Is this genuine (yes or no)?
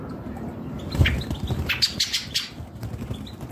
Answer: yes